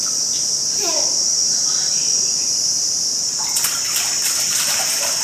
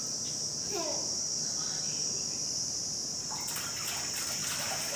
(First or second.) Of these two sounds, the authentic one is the second